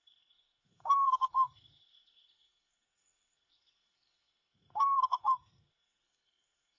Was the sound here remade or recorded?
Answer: remade